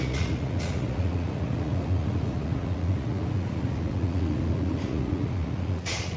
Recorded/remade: remade